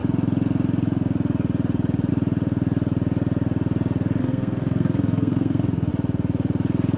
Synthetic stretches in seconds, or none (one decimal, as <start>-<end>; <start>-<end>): 4.2-5.9